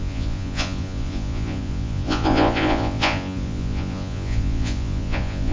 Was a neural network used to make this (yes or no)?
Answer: yes